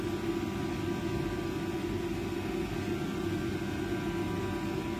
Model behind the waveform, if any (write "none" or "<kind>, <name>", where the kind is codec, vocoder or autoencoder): none